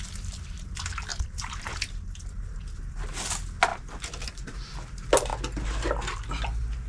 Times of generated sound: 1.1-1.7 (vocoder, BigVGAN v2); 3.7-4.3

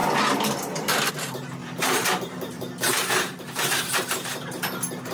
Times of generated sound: 1.6-3.9 (vocoder, BigVGAN v2)

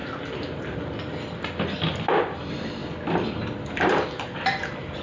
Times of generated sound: 2.2-2.8 (vocoder, BigVGAN v2); 3.8-5.0

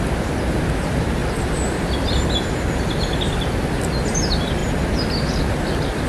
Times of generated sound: 1.2-2.2 (vocoder, BigVGAN v2)

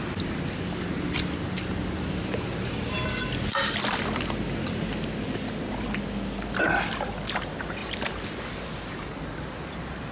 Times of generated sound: 7.8-9.7 (vocoder, BigVGAN v2)

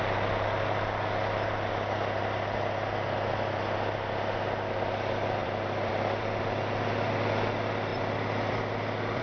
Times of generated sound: 5.4-6.4 (vocoder, BigVGAN v2); 7.9-9.2

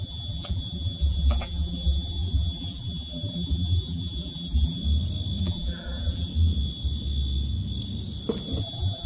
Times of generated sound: 0.0-4.8 (vocoder, BigVGAN v2); 5.4-6.3; 8.6-9.1

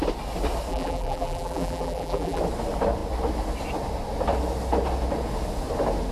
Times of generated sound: 0.7-2.4 (vocoder, BigVGAN v2)